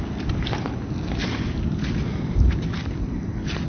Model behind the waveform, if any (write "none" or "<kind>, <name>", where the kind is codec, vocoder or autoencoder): none